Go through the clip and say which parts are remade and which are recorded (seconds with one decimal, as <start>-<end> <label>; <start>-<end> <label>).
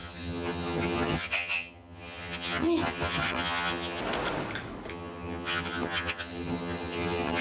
0.0-4.0 remade; 4.0-4.9 recorded; 4.9-7.4 remade